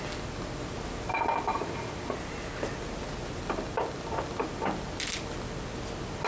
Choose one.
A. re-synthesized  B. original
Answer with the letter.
B